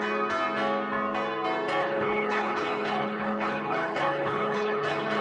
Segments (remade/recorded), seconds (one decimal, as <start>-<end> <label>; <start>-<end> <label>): 0.0-1.8 recorded; 1.8-5.2 remade